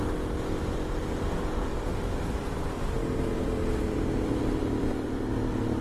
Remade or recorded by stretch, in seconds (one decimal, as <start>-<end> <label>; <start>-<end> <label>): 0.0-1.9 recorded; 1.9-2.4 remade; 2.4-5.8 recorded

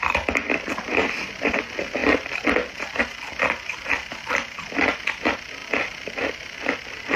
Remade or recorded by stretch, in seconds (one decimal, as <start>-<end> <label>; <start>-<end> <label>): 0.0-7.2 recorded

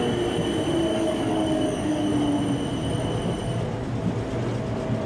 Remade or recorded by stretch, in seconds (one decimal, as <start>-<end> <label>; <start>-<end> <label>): 0.0-0.9 recorded; 0.9-2.1 remade; 2.1-5.1 recorded